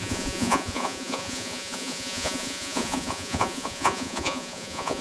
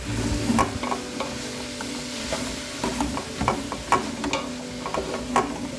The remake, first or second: first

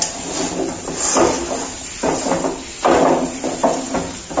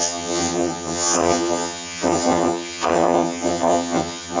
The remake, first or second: second